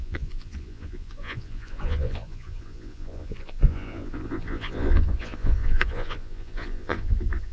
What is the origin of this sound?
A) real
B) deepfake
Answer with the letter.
B